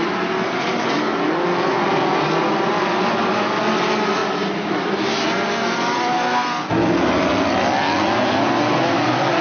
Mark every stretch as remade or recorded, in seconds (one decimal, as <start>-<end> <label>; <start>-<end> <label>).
0.0-4.2 recorded; 4.2-5.3 remade; 5.3-9.4 recorded